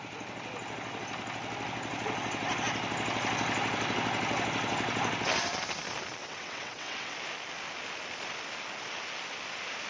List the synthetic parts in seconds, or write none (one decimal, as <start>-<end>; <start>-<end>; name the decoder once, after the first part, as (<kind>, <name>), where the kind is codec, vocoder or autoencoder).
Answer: 6.2-7.1 (vocoder, WaveNeXt)